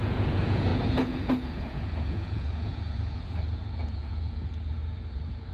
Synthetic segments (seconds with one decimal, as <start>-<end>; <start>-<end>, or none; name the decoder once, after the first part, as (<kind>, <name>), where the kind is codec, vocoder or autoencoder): 0.0-5.5 (vocoder, Vocos)